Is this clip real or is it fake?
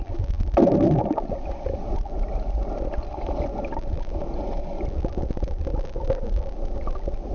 real